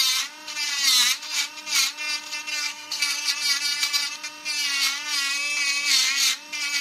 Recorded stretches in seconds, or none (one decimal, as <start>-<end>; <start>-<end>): 0.0-2.5; 3.3-6.8